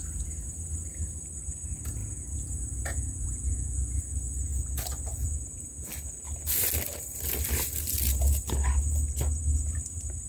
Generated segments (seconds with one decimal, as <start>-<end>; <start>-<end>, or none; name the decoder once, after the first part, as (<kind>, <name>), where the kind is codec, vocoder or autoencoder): 2.0-4.0 (vocoder, Vocos); 4.5-5.9